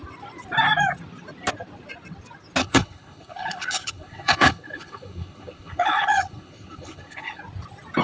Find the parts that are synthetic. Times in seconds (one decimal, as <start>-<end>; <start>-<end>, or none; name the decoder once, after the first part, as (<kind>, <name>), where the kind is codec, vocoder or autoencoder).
2.6-7.4 (codec, HILCodec)